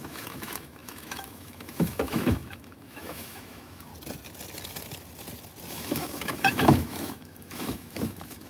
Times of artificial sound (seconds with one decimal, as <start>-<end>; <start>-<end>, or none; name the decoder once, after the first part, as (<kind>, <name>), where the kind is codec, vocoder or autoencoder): 0.0-3.9 (autoencoder, DAC-VAE); 5.7-8.5